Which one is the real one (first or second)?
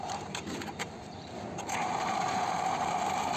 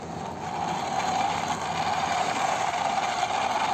second